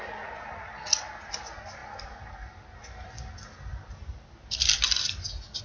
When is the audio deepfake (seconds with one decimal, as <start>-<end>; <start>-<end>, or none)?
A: none